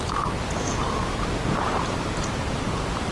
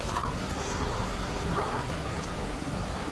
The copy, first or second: second